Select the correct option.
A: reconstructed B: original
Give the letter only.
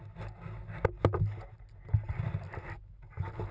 B